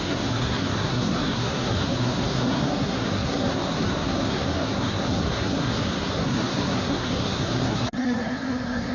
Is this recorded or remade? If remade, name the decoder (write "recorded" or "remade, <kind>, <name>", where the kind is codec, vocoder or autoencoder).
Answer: remade, codec, SNAC